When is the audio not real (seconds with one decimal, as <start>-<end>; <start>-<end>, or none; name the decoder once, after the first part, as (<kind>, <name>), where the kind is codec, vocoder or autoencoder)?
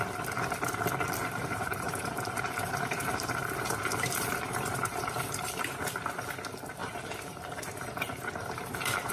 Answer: 1.2-5.8 (vocoder, BigVGAN v2); 6.8-9.1